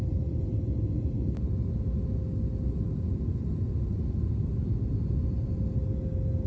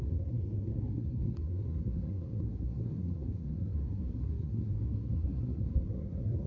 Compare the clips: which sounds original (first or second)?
first